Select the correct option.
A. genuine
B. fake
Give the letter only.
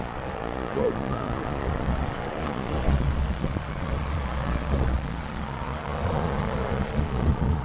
B